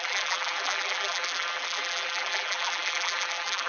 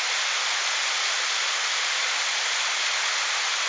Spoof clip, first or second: first